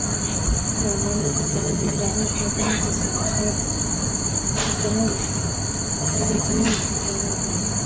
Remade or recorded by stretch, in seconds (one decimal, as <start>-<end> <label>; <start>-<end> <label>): 0.0-1.2 recorded; 1.2-2.0 remade; 2.0-6.0 recorded; 6.0-6.7 remade; 6.7-7.9 recorded